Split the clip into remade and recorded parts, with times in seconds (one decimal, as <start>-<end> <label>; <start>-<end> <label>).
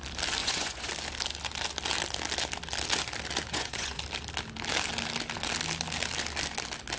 0.0-0.4 recorded; 0.4-0.9 remade; 0.9-3.5 recorded; 3.5-4.0 remade; 4.0-7.0 recorded